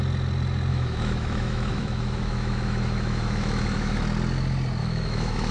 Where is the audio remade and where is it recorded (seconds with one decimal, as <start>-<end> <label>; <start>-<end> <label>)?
0.0-0.7 recorded; 0.7-4.0 remade; 4.0-4.8 recorded; 4.8-5.5 remade